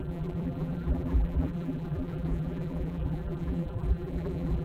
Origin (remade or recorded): remade